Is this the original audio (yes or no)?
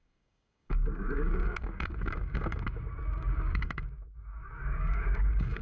no